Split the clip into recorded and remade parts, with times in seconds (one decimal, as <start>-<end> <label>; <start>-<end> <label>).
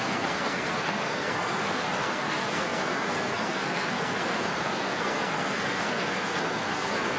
0.0-7.2 remade